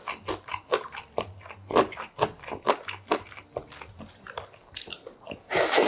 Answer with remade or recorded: recorded